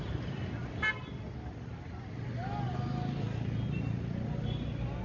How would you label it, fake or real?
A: real